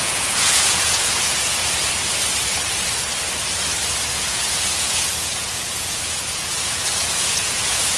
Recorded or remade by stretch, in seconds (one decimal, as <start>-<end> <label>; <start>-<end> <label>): 0.0-1.6 remade; 1.6-4.0 recorded; 4.0-8.0 remade